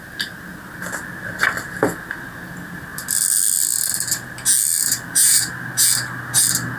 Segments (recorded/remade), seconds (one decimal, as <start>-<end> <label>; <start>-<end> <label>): 0.0-4.8 recorded; 4.8-5.5 remade; 5.5-6.8 recorded